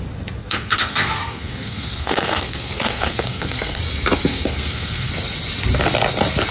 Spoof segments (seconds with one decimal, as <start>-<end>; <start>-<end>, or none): 0.4-3.8; 4.3-5.1